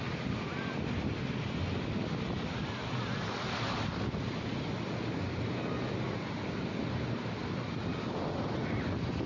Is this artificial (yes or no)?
no